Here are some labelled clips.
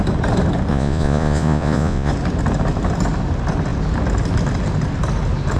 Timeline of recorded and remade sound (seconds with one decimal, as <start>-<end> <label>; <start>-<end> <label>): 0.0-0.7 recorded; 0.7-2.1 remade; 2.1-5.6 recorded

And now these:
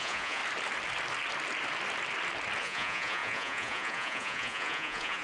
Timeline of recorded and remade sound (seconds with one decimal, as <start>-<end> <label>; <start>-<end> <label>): 0.0-0.4 remade; 0.4-2.6 recorded; 2.6-5.2 remade

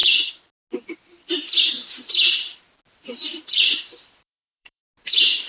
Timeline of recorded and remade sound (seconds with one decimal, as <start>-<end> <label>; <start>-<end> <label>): 0.0-3.3 recorded; 3.3-4.8 remade; 4.8-5.5 recorded

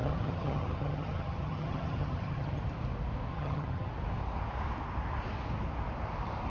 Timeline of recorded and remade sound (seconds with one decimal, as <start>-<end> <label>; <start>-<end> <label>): 0.0-2.6 remade; 2.6-3.3 recorded; 3.3-3.9 remade; 3.9-6.5 recorded